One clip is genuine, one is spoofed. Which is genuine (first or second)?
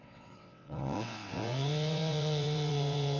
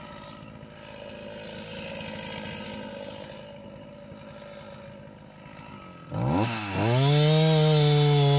second